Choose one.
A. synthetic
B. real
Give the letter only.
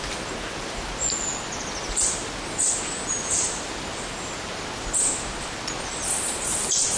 B